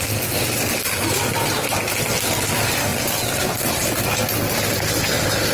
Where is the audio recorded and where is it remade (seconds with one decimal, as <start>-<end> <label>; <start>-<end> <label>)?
0.0-5.5 recorded